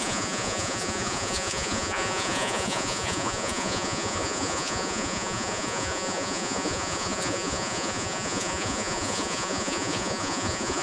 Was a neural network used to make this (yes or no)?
yes